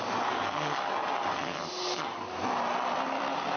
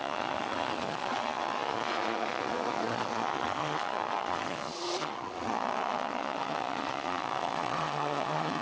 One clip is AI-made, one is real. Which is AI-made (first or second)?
second